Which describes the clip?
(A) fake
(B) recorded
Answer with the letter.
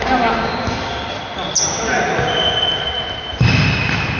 B